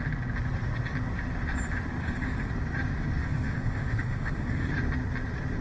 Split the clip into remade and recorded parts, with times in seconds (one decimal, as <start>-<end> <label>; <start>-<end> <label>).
0.0-2.0 recorded; 2.0-2.5 remade; 2.5-3.2 recorded; 3.2-4.7 remade; 4.7-5.6 recorded